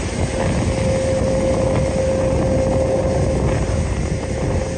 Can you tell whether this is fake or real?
real